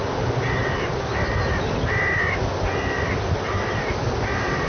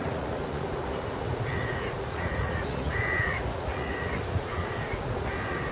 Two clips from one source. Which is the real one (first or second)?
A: first